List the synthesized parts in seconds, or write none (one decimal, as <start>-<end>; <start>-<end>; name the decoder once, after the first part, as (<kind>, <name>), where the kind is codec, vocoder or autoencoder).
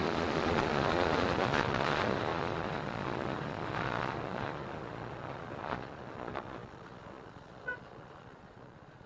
0.0-9.1 (vocoder, Vocos)